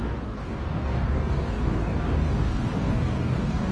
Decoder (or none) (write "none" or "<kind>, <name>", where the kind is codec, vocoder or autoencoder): codec, DAC